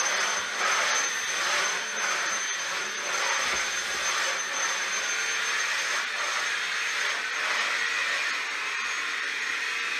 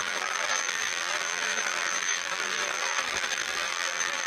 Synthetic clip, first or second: second